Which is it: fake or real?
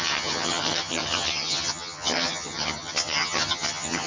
fake